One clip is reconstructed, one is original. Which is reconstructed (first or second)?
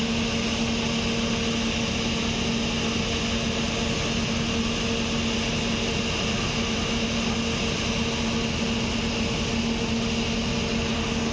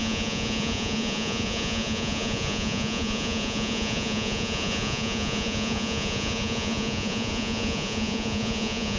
second